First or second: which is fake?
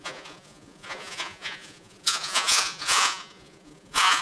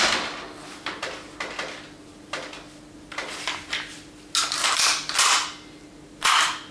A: first